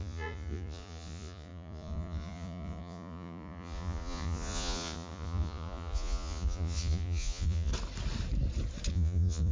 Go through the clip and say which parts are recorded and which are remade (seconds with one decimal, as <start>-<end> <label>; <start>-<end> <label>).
0.0-7.7 remade; 7.7-8.9 recorded; 8.9-9.5 remade